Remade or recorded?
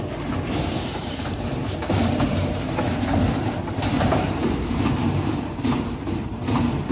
remade